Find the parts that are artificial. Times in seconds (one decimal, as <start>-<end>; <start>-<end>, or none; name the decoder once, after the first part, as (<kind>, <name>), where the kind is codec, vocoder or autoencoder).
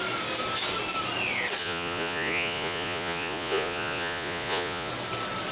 1.6-4.9 (vocoder, Vocos)